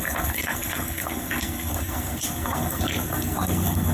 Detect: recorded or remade remade